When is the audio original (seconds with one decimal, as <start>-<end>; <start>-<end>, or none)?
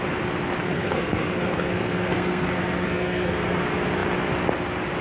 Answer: 0.0-0.6; 3.6-5.0